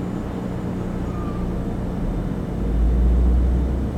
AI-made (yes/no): no